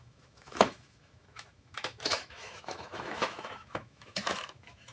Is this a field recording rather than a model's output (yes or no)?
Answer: no